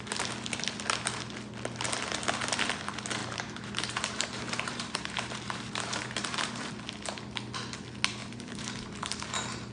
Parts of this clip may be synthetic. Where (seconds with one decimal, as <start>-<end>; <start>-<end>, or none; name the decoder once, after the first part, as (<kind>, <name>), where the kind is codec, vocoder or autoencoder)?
3.2-6.7 (vocoder, BigVGAN v2); 8.2-9.7